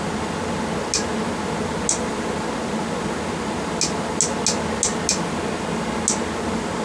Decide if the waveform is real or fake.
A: real